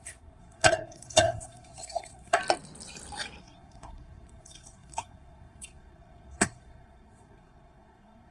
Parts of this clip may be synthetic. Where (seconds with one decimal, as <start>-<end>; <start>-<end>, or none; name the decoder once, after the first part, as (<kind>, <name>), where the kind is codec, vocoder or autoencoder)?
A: 0.0-2.4 (codec, SNAC); 3.4-8.3